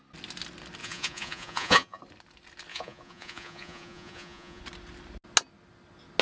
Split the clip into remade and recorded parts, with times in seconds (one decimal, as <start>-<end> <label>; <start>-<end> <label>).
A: 0.0-0.8 recorded; 0.8-2.0 remade; 2.0-2.7 recorded; 2.7-4.6 remade; 4.6-6.2 recorded